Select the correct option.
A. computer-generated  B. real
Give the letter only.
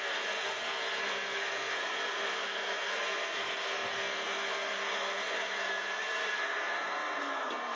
A